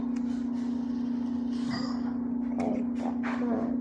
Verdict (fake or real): real